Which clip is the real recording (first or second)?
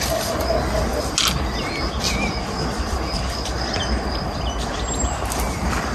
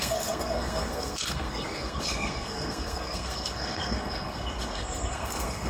first